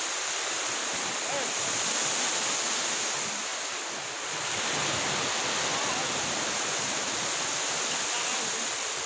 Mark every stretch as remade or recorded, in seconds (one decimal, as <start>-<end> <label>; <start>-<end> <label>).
0.0-9.1 recorded

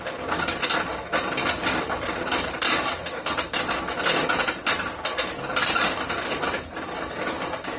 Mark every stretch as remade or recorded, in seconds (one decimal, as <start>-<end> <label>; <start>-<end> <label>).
0.0-1.4 recorded; 1.4-3.8 remade; 3.8-5.5 recorded; 5.5-6.7 remade; 6.7-7.8 recorded

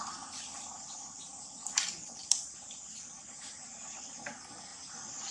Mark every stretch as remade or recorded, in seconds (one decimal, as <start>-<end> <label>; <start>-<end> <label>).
0.0-5.3 recorded

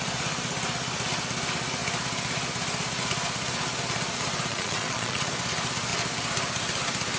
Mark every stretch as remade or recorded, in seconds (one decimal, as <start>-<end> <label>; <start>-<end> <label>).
0.0-4.5 recorded; 4.5-5.3 remade; 5.3-7.2 recorded

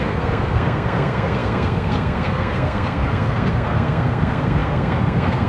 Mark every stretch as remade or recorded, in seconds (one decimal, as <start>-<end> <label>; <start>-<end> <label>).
0.0-5.5 remade

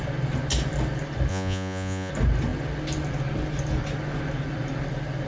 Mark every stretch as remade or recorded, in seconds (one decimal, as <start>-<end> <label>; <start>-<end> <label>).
0.0-1.3 recorded; 1.3-2.1 remade; 2.1-5.3 recorded

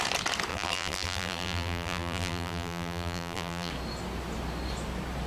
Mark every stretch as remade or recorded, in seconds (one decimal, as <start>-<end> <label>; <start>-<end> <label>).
0.0-0.5 recorded; 0.5-3.7 remade; 3.7-5.3 recorded

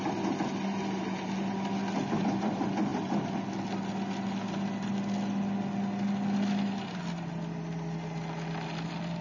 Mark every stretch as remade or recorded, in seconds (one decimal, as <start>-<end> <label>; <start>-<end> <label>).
0.0-9.2 recorded